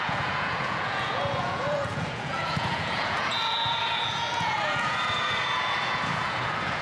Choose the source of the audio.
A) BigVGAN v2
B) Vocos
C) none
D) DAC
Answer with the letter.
B